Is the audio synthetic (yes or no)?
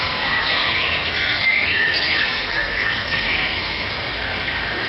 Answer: yes